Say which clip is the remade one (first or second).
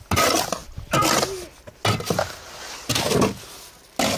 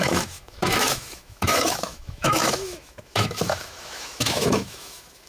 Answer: second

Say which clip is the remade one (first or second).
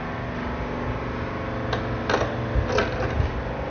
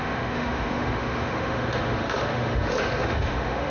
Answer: second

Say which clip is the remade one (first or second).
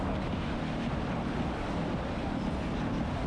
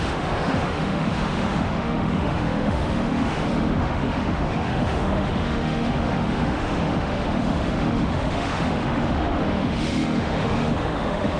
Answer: second